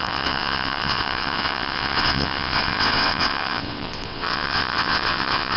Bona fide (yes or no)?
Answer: no